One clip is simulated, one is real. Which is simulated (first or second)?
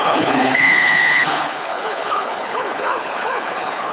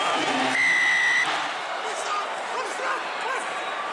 first